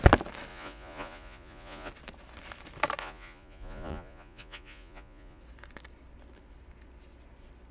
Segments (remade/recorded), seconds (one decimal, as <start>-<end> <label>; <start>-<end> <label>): 0.0-0.5 recorded; 0.5-1.9 remade; 1.9-3.0 recorded; 3.0-5.4 remade; 5.4-7.7 recorded

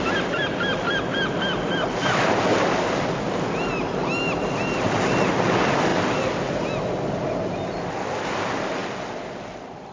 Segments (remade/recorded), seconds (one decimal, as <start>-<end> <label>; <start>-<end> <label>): 0.0-9.9 recorded

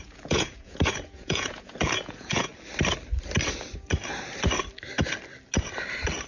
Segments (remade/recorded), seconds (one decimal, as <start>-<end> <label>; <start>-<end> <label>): 0.0-2.5 remade; 2.5-6.3 recorded

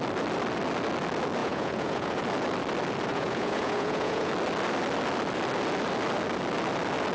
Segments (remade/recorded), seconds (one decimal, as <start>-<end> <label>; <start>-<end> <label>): 0.0-1.4 recorded; 1.4-2.2 remade; 2.2-3.1 recorded; 3.1-4.3 remade; 4.3-7.1 recorded

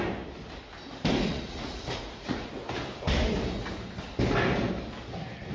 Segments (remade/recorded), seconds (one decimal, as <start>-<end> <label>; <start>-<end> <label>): 0.0-1.3 recorded; 1.3-2.5 remade; 2.5-5.5 recorded